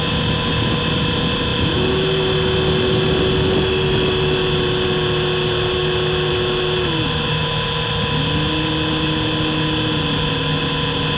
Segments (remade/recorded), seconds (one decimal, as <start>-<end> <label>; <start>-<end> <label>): 0.0-11.2 recorded